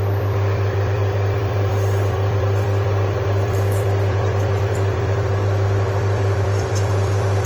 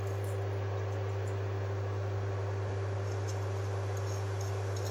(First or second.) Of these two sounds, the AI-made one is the first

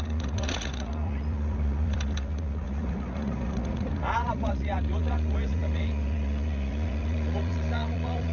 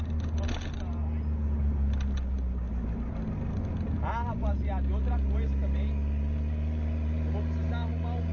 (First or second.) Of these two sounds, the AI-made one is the first